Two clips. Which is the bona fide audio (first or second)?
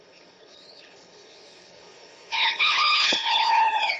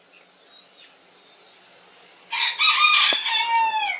second